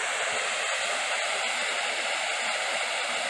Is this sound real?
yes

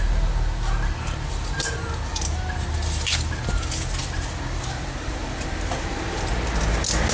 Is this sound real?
yes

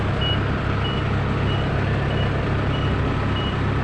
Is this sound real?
yes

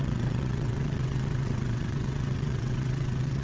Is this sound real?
no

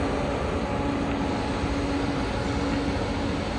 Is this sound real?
yes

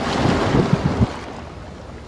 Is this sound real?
yes